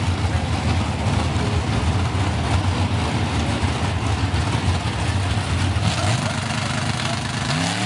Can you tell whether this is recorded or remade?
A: recorded